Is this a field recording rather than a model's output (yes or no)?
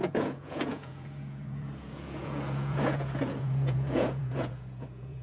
no